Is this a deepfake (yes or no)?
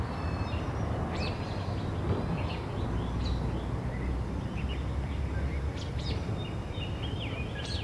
no